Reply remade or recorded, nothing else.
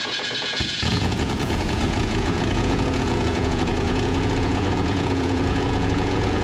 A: remade